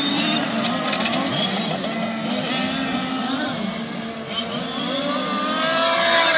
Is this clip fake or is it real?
real